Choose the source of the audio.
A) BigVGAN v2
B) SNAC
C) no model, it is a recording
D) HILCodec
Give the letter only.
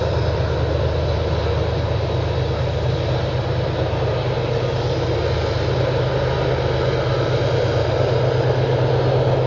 C